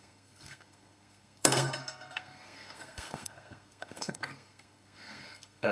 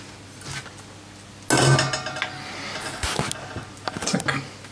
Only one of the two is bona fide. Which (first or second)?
second